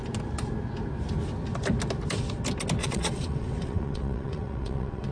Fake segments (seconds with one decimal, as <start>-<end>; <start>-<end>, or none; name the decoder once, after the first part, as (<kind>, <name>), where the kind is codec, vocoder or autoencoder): 2.8-5.1 (vocoder, WaveNeXt)